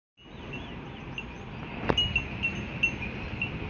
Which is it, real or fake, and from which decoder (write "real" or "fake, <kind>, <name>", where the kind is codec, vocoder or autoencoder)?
real